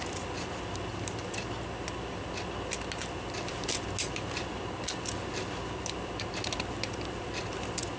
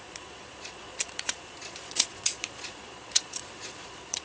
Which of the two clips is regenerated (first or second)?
second